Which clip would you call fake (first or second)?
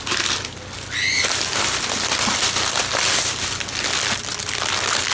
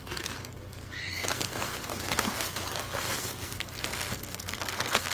second